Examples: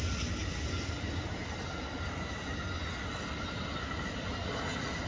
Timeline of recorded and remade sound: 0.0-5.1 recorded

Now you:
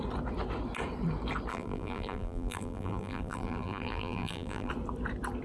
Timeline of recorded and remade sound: 0.0-1.5 recorded; 1.5-4.7 remade; 4.7-5.4 recorded

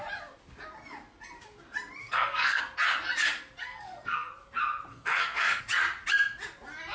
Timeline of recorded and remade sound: 0.0-2.0 recorded; 2.0-2.6 remade; 2.6-3.6 recorded; 3.6-4.3 remade; 4.3-4.9 recorded; 4.9-5.6 remade; 5.6-6.9 recorded